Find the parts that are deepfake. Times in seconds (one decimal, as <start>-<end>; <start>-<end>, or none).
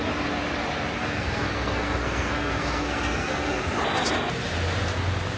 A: 1.0-3.6